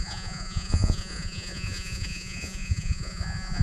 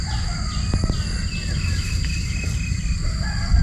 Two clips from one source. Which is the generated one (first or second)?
first